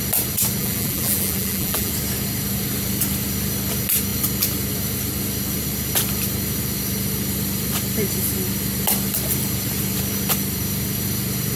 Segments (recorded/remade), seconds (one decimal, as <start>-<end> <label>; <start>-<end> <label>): 0.0-0.6 recorded; 0.6-1.9 remade; 1.9-11.6 recorded